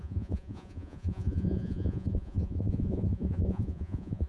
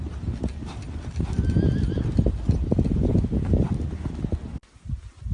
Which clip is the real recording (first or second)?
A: second